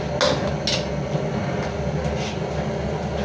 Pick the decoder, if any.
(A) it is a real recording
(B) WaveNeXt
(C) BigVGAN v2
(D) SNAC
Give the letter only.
A